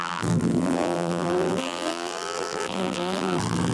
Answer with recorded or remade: remade